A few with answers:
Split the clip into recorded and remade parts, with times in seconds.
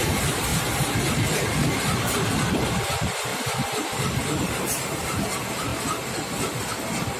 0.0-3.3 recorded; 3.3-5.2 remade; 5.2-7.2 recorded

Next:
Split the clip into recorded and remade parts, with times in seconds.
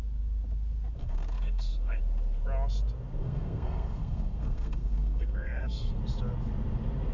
0.0-1.0 recorded; 1.0-2.0 remade; 2.0-3.2 recorded; 3.2-6.0 remade; 6.0-7.1 recorded